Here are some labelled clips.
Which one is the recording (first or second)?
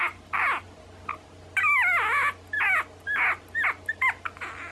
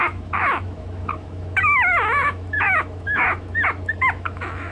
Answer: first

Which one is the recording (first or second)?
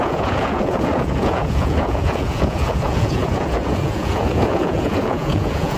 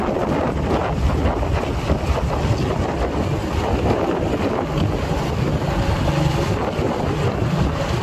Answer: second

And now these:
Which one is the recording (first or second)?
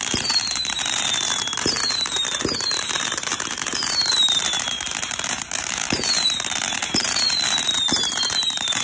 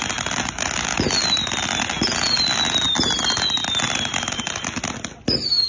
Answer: second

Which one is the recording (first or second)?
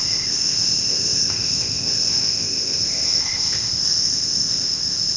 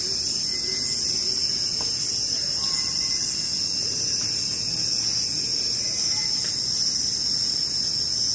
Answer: second